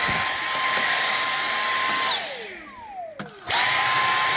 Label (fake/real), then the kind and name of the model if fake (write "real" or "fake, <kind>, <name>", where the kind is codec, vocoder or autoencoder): real